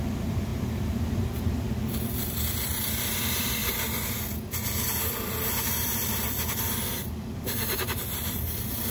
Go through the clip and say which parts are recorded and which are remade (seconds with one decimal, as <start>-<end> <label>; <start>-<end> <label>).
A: 0.0-3.6 remade; 3.6-4.3 recorded; 4.3-8.9 remade